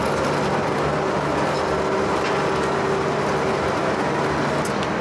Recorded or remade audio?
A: recorded